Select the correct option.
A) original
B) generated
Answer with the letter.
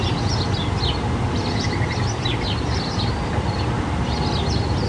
A